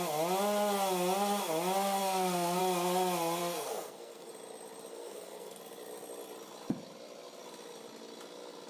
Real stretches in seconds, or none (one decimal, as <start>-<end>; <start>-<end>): 0.0-2.0; 2.6-3.4; 4.3-4.9; 5.6-8.7